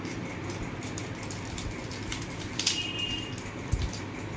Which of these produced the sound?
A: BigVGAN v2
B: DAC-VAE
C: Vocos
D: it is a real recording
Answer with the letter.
D